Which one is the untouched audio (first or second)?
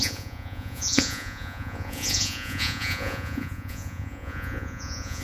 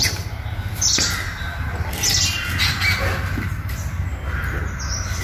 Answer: second